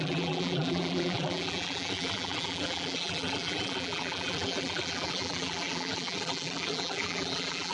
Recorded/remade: remade